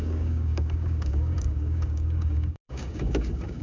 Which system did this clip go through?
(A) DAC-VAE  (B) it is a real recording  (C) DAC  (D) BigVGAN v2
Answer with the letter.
C